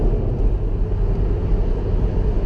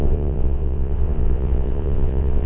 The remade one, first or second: second